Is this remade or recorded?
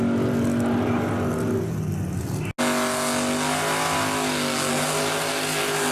recorded